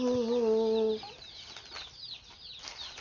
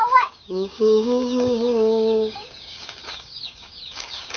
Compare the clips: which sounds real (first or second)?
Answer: first